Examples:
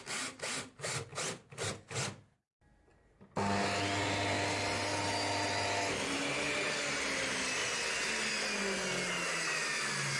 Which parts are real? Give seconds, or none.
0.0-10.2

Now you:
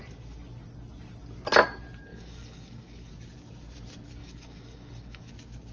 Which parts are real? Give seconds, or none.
0.0-2.1; 3.1-4.2; 5.3-5.7

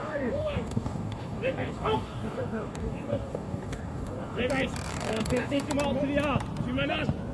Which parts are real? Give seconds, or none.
4.4-4.9; 5.7-7.3

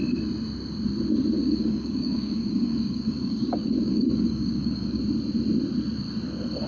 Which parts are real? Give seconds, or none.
0.0-1.4; 5.0-6.7